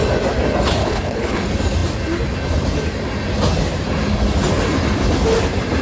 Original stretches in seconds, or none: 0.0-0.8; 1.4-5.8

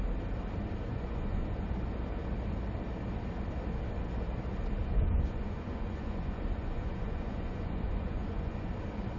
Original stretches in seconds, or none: 0.0-0.9; 1.7-4.8; 8.7-9.2

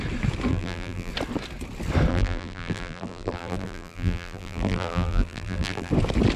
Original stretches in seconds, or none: 0.0-0.5; 1.1-2.1; 5.9-6.4

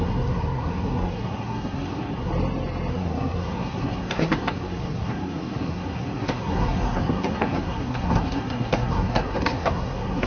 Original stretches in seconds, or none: 2.3-2.9

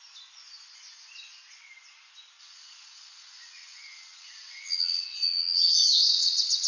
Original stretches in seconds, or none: 0.0-2.4

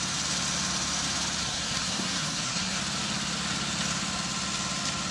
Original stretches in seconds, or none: 0.0-1.4; 2.8-5.1

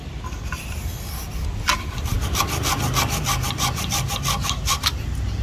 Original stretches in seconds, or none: 0.0-4.4; 5.0-5.4

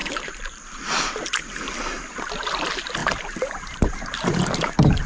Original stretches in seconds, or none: 1.1-3.0